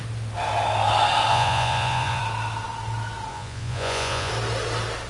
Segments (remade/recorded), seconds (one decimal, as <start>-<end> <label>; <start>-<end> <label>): 0.0-1.3 recorded; 1.3-2.2 remade; 2.2-3.3 recorded; 3.3-4.3 remade; 4.3-5.1 recorded